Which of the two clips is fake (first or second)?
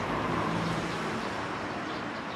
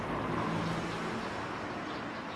first